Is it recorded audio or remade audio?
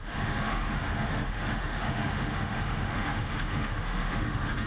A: remade